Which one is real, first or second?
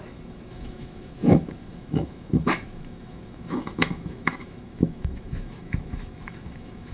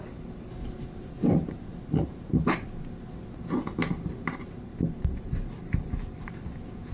second